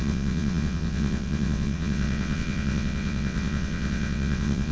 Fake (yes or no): yes